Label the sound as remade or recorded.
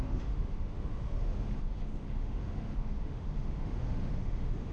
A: remade